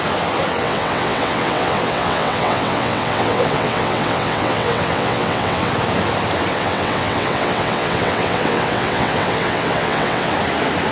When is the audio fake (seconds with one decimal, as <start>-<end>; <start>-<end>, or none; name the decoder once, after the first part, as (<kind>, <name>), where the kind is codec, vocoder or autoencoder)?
0.5-5.7 (vocoder, WaveNeXt); 6.5-10.3

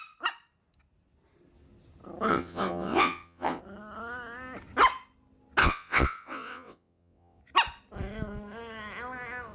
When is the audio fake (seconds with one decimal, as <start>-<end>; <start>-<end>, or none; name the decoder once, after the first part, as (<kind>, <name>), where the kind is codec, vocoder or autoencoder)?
2.3-3.6 (vocoder, WaveNeXt); 5.6-7.4

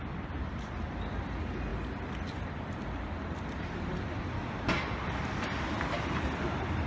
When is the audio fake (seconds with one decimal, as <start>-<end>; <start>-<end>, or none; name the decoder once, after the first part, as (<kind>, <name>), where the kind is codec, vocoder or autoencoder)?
none

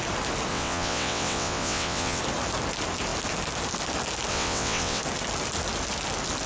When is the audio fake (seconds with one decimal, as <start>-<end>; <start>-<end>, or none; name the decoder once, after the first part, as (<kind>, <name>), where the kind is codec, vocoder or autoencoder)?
0.5-2.2 (vocoder, WaveNeXt); 4.3-5.0

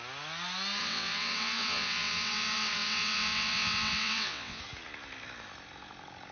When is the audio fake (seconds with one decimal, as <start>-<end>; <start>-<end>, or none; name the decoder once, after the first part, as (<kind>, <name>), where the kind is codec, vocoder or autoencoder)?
0.8-4.6 (vocoder, WaveNeXt)